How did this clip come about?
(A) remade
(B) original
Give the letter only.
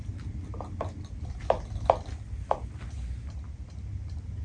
B